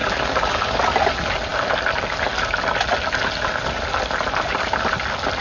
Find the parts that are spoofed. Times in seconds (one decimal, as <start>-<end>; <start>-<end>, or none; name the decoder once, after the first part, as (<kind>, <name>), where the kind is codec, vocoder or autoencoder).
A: none